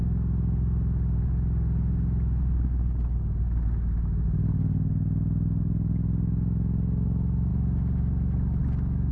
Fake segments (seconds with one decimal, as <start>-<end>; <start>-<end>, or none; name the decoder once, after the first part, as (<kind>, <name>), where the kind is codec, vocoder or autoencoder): none